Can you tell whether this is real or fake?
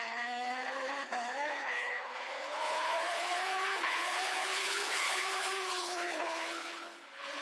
fake